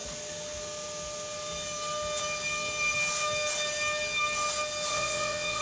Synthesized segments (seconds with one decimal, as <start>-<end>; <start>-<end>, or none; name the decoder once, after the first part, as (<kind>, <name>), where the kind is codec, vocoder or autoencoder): 4.9-5.6 (vocoder, WaveNeXt)